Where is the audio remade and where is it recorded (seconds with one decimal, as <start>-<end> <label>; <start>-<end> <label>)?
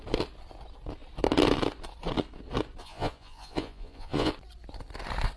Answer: 0.0-2.8 recorded; 2.8-4.3 remade; 4.3-5.4 recorded